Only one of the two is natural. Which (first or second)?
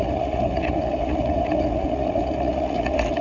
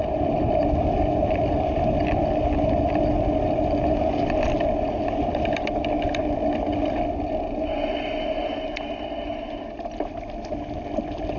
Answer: second